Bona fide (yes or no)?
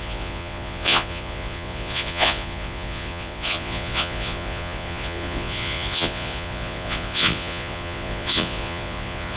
no